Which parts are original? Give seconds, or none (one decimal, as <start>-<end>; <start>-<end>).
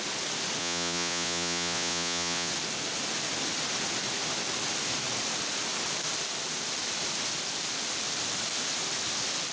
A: 0.0-0.6; 2.5-9.5